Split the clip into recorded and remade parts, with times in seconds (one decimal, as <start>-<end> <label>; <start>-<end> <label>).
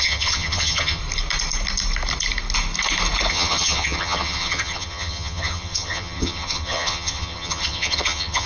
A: 0.0-1.0 remade; 1.0-3.3 recorded; 3.3-8.5 remade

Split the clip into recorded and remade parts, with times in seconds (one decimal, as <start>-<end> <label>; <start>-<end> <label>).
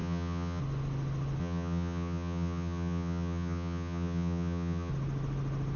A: 0.0-0.6 remade; 0.6-1.4 recorded; 1.4-4.9 remade; 4.9-5.8 recorded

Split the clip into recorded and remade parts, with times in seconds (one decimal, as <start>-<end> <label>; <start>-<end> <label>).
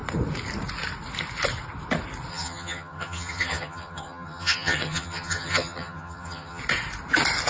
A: 0.0-2.3 recorded; 2.3-6.6 remade; 6.6-7.5 recorded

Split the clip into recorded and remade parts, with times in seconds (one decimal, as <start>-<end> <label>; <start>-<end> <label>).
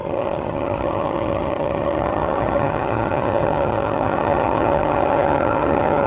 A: 0.0-6.1 remade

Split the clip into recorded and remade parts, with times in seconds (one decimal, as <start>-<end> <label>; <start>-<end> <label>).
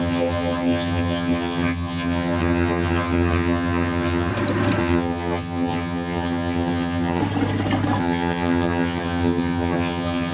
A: 0.0-4.3 remade; 4.3-4.8 recorded; 4.8-7.2 remade; 7.2-8.0 recorded; 8.0-10.3 remade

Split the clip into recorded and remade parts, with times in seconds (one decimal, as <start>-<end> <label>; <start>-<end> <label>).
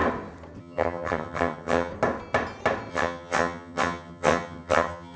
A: 0.0-0.6 recorded; 0.6-1.9 remade; 1.9-2.9 recorded; 2.9-5.2 remade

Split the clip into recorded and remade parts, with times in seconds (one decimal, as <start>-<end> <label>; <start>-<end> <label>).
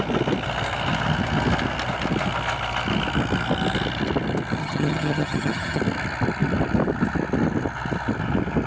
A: 0.0-4.6 recorded; 4.6-5.8 remade; 5.8-8.7 recorded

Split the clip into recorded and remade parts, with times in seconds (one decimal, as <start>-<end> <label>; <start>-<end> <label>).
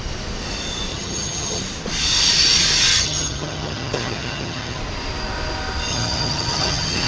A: 0.0-0.9 recorded; 0.9-1.6 remade; 1.6-2.9 recorded; 2.9-4.8 remade; 4.8-5.9 recorded; 5.9-7.1 remade